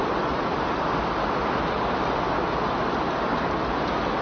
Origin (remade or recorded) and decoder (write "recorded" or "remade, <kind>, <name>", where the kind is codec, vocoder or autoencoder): recorded